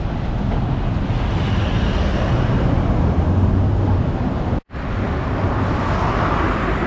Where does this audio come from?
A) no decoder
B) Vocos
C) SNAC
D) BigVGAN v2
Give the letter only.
A